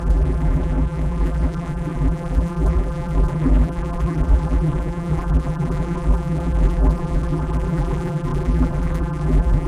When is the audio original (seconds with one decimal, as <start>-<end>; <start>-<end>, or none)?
none